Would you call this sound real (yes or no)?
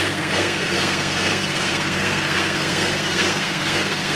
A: no